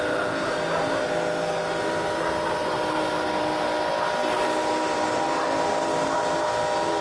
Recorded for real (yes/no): yes